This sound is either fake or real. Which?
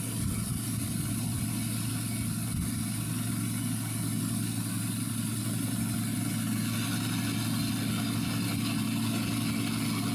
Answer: real